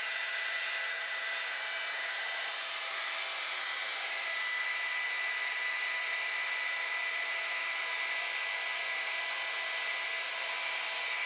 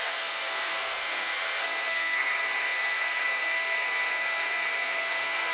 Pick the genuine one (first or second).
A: first